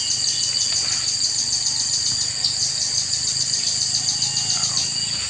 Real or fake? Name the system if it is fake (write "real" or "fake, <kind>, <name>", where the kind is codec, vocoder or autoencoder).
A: real